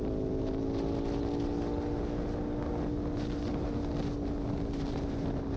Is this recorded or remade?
recorded